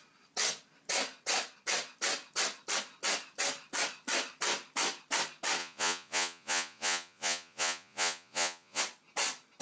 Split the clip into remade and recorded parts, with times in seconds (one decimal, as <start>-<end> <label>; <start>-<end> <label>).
0.0-5.6 recorded; 5.6-8.8 remade; 8.8-9.6 recorded